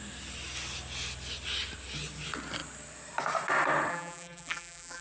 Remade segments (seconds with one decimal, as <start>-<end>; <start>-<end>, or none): 3.9-5.0